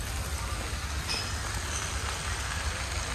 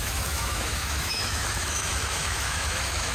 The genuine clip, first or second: first